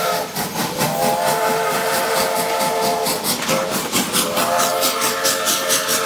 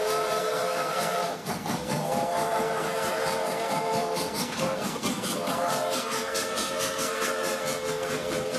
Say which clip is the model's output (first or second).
second